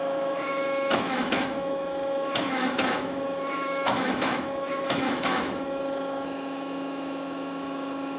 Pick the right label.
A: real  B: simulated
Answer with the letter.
B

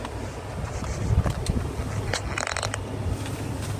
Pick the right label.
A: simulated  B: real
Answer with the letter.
B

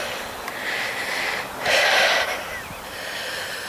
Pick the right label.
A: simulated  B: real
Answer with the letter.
B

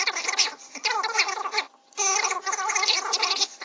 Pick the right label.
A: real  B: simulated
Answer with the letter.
A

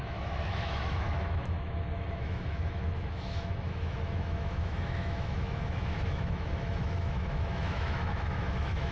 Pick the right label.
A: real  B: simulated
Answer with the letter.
B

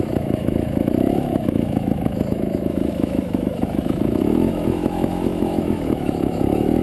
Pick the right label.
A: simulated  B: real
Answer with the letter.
A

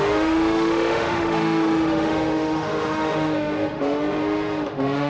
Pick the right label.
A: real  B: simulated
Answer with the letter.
B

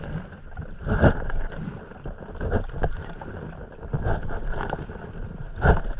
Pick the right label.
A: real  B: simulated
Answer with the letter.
A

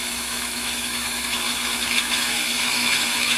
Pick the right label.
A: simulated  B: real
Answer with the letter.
A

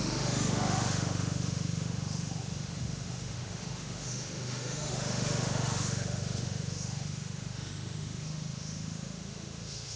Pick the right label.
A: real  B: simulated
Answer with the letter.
B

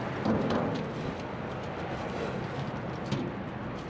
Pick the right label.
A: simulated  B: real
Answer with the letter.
B